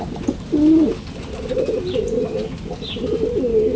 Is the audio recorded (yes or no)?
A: yes